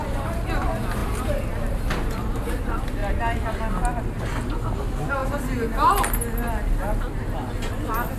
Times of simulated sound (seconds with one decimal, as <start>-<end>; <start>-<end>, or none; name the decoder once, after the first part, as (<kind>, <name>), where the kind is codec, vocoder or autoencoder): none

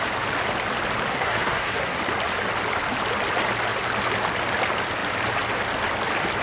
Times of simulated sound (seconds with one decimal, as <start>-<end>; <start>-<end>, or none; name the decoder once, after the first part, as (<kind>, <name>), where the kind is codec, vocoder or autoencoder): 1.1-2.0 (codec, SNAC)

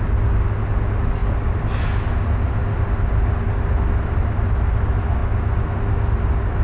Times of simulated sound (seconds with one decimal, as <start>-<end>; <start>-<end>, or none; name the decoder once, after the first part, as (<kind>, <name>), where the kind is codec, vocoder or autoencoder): none